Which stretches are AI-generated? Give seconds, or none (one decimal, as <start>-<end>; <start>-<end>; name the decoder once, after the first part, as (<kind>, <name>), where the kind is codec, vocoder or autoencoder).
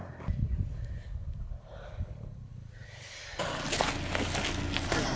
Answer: none